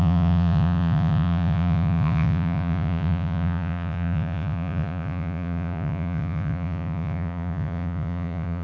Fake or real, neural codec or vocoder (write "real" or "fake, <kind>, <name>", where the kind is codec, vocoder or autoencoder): fake, vocoder, Vocos